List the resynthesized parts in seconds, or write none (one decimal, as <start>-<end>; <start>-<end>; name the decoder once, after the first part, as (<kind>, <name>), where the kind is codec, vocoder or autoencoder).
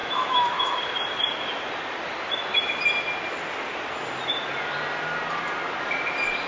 0.0-0.8 (autoencoder, DAC-VAE)